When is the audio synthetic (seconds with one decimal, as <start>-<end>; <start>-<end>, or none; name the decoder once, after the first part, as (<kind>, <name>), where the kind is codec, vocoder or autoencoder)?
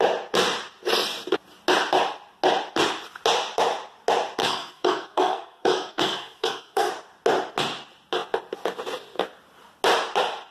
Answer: 4.4-6.9 (codec, SNAC)